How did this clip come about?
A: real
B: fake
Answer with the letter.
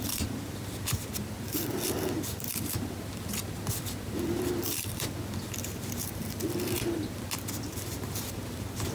B